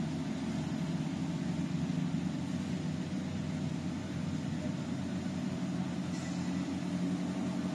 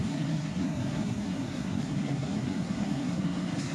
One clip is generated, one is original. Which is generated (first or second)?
second